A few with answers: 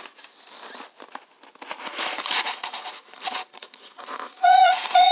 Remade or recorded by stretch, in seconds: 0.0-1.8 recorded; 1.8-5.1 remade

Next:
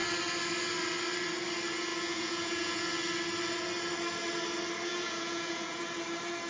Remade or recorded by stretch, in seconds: 0.0-1.9 recorded; 1.9-2.9 remade; 2.9-4.9 recorded; 4.9-5.8 remade; 5.8-6.5 recorded

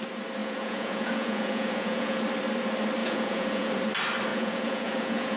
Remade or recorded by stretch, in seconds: 0.0-0.4 recorded; 0.4-2.2 remade; 2.2-3.0 recorded; 3.0-3.7 remade; 3.7-4.3 recorded; 4.3-5.4 remade

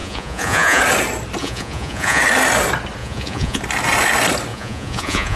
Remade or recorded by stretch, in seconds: 0.0-0.8 remade; 0.8-1.4 recorded; 1.4-2.2 remade; 2.2-3.0 recorded; 3.0-3.6 remade; 3.6-4.5 recorded; 4.5-5.4 remade

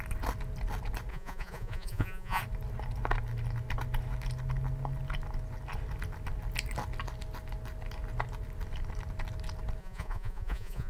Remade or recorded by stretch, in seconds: 0.0-1.1 recorded; 1.1-2.4 remade; 2.4-9.8 recorded; 9.8-10.9 remade